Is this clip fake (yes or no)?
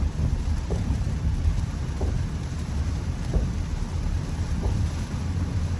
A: yes